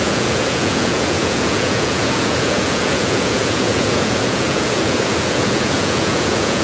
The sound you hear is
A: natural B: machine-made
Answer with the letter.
B